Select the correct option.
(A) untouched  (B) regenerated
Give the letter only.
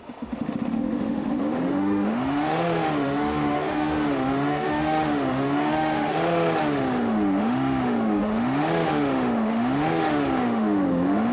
B